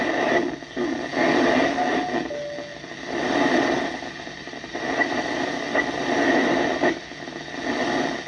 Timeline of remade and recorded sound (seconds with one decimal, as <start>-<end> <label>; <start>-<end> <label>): 0.0-2.7 recorded; 2.7-7.6 remade; 7.6-8.3 recorded